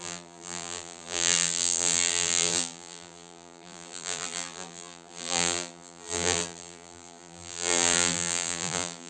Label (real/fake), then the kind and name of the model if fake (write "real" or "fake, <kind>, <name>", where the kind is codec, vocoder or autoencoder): fake, vocoder, BigVGAN v2